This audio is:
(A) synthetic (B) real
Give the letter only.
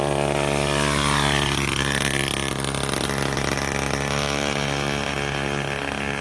B